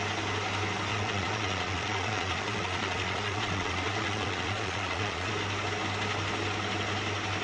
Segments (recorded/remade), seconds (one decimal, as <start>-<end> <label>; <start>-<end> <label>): 0.0-0.9 recorded; 0.9-5.3 remade; 5.3-7.4 recorded